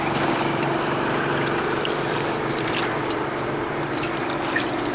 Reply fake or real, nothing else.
fake